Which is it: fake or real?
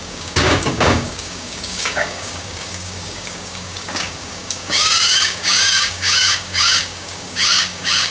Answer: fake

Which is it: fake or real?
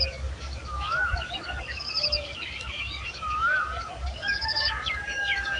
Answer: fake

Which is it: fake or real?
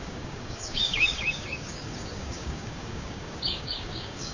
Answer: fake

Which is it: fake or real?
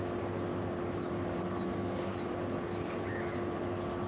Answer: real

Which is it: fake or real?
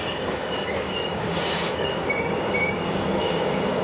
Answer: fake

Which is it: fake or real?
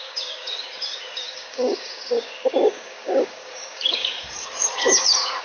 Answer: fake